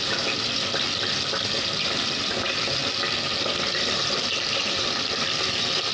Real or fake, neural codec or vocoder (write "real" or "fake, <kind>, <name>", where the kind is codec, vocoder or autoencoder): real